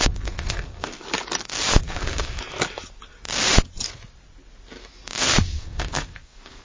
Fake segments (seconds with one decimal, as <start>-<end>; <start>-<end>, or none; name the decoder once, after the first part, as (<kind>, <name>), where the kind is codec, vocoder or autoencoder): 0.0-1.0 (codec, SNAC); 1.8-2.4; 5.2-6.6